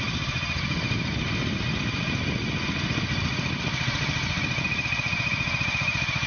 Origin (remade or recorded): recorded